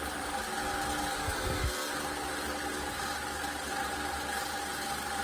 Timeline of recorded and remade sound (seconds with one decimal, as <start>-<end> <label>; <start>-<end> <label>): 0.0-1.2 recorded; 1.2-1.9 remade; 1.9-5.2 recorded